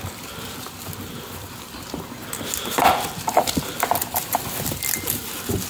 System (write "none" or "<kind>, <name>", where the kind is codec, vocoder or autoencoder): none